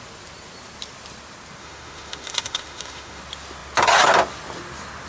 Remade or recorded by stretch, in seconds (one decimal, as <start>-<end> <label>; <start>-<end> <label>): 0.0-1.6 recorded; 1.6-3.2 remade; 3.2-5.1 recorded